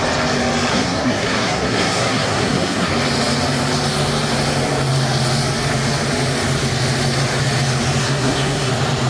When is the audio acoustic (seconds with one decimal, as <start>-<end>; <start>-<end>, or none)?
0.0-0.7; 2.9-8.0; 8.7-9.1